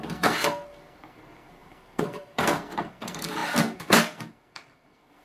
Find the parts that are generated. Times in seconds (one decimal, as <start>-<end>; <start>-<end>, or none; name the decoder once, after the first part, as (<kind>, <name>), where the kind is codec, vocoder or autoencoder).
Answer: 0.0-5.2 (codec, SNAC)